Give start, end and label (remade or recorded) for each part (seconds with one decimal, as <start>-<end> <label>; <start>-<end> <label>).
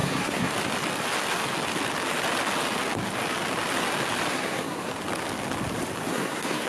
0.0-0.5 remade; 0.5-4.3 recorded; 4.3-4.9 remade; 4.9-6.1 recorded; 6.1-6.7 remade